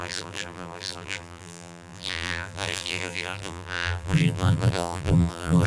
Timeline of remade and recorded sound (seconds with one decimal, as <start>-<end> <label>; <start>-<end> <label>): 0.0-5.7 remade